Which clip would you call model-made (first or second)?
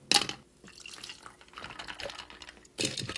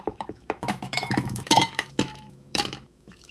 second